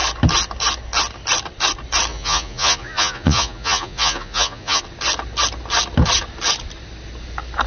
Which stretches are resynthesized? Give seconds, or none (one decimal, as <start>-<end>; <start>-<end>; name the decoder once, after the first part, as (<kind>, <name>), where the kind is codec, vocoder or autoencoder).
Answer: 2.1-4.8 (vocoder, Vocos)